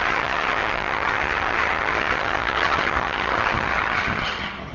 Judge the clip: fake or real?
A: fake